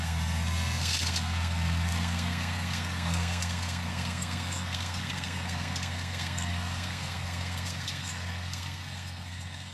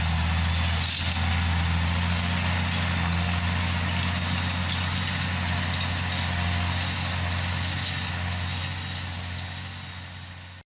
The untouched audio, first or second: second